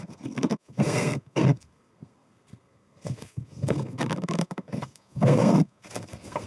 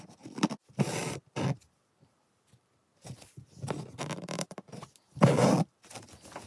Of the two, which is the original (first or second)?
second